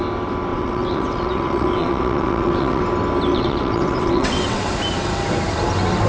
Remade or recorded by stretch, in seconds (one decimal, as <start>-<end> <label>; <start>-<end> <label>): 0.0-0.5 recorded; 0.5-2.8 remade; 2.8-3.3 recorded; 3.3-4.6 remade; 4.6-6.1 recorded